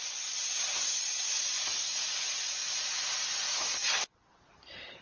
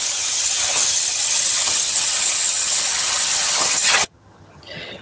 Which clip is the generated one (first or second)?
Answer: second